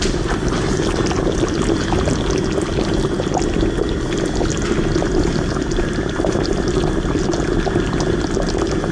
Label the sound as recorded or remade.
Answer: recorded